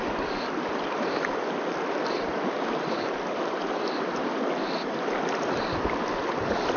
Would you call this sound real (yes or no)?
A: yes